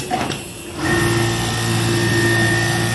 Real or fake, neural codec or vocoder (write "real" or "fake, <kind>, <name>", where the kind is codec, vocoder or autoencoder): real